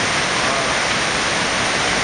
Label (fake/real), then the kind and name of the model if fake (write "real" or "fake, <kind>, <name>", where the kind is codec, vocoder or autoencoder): fake, vocoder, BigVGAN v2